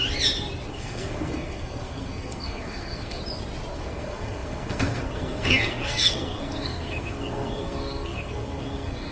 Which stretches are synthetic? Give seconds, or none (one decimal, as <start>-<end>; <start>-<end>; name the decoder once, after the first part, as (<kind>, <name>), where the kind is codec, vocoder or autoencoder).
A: 0.7-3.2 (codec, SNAC); 3.7-9.1